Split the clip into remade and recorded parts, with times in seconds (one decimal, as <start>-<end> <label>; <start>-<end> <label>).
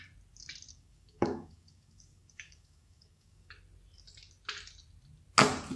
0.0-0.7 recorded; 0.7-3.5 remade; 3.5-5.8 recorded